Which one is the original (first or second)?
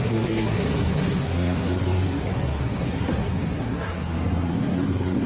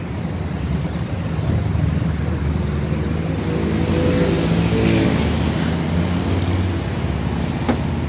second